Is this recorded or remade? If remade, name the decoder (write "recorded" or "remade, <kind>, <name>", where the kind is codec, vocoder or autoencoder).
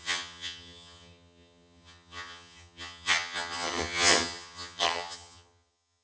remade, vocoder, HiFi-GAN